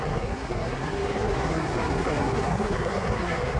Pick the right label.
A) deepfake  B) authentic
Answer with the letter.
A